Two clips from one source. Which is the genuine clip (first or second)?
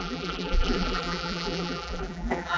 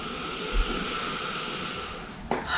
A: second